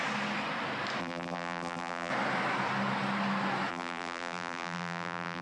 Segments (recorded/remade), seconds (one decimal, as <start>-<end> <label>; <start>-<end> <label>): 0.0-1.0 recorded; 1.0-2.1 remade; 2.1-3.7 recorded; 3.7-5.4 remade

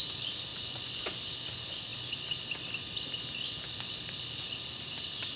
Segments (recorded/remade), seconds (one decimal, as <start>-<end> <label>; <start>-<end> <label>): 0.0-0.5 recorded; 0.5-1.0 remade; 1.0-5.4 recorded

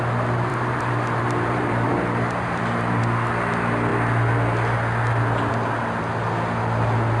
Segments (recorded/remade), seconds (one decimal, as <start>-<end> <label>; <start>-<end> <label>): 0.0-0.5 recorded; 0.5-3.0 remade; 3.0-7.2 recorded

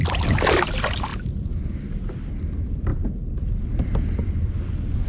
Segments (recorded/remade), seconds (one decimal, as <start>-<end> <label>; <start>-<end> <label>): 0.0-2.9 recorded; 2.9-3.6 remade; 3.6-5.1 recorded

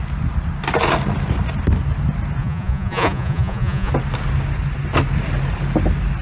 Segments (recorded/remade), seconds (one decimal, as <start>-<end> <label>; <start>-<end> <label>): 0.0-2.4 recorded; 2.4-3.9 remade; 3.9-6.2 recorded

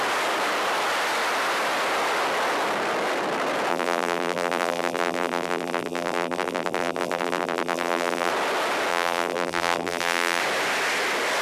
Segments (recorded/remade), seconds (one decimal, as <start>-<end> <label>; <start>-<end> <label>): 0.0-3.7 recorded; 3.7-8.3 remade; 8.3-8.9 recorded; 8.9-10.4 remade; 10.4-11.4 recorded

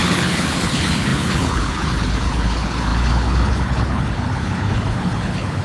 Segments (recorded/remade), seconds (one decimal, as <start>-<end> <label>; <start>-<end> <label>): 0.0-5.6 remade